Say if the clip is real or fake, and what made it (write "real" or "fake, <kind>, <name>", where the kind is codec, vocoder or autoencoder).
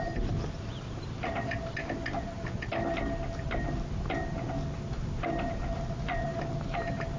real